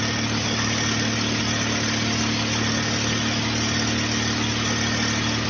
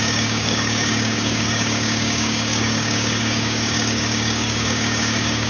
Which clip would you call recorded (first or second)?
first